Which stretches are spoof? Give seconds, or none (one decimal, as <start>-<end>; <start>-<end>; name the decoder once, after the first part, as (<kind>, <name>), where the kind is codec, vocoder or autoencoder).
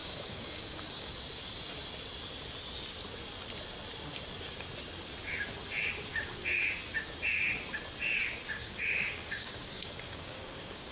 0.0-1.1 (codec, DAC); 8.6-10.9